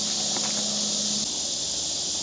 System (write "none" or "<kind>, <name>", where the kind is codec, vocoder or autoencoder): none